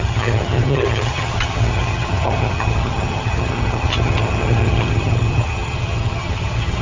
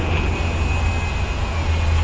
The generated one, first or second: first